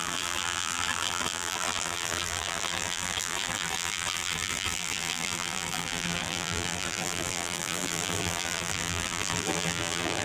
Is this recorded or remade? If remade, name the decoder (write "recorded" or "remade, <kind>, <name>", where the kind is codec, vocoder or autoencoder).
remade, vocoder, BigVGAN v2